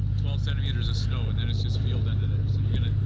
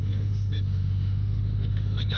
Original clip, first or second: first